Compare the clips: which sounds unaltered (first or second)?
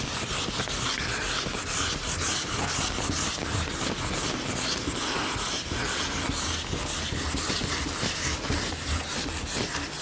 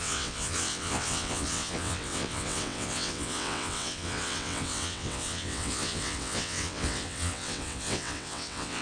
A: first